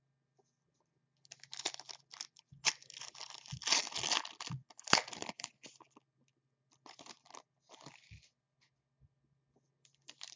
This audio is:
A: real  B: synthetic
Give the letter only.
A